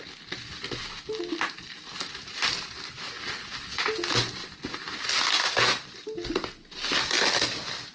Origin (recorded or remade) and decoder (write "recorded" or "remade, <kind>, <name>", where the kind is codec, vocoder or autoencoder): recorded